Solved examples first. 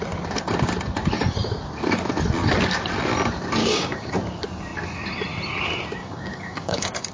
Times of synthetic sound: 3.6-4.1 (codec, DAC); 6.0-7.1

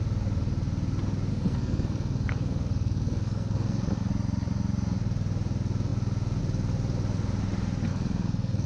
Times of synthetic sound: 1.3-4.1 (codec, SNAC); 7.9-8.7

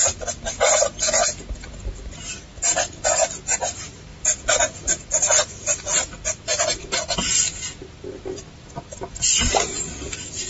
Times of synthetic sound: 4.1-4.9 (vocoder, BigVGAN v2)

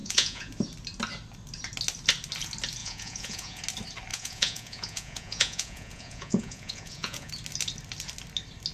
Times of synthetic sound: 0.0-0.5 (vocoder, Vocos); 2.8-3.6; 4.1-7.3

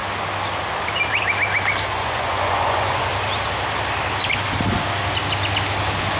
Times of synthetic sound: 1.9-3.1 (vocoder, Vocos)

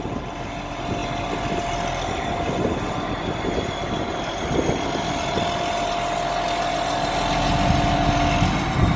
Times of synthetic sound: none

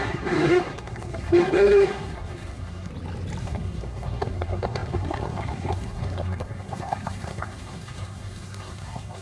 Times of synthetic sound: 0.0-2.9 (codec, SNAC); 3.4-9.2